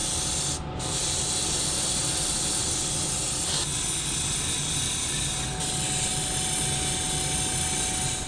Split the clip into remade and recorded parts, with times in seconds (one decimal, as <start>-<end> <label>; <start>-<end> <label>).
0.0-8.3 recorded